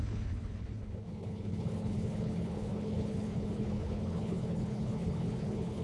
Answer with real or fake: fake